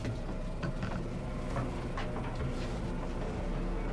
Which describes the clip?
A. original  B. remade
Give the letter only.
A